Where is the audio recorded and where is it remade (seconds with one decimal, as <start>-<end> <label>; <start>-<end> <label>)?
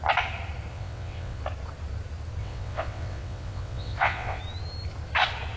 0.0-0.7 recorded; 0.7-1.4 remade; 1.4-2.4 recorded; 2.4-4.4 remade; 4.4-5.6 recorded